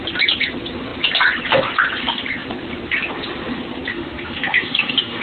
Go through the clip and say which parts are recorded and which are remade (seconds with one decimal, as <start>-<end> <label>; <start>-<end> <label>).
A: 0.0-3.9 recorded; 3.9-5.2 remade

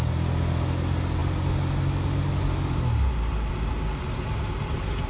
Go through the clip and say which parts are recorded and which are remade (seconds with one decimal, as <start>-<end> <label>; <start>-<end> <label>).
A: 0.0-5.1 recorded